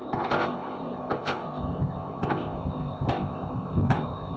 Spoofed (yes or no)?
yes